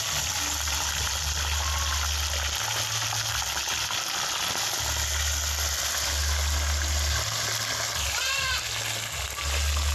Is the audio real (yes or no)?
yes